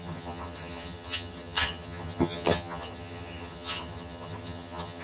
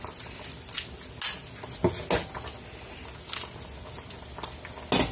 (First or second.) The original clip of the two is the second